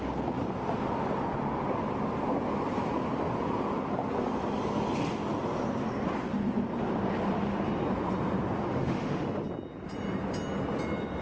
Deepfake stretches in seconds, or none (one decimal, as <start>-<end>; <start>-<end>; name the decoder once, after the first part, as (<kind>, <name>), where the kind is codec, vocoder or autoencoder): 8.6-9.4 (autoencoder, DAC-VAE)